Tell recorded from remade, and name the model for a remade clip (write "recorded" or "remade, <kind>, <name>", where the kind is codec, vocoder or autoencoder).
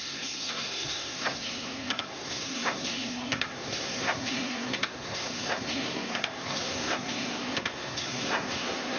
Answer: remade, codec, SNAC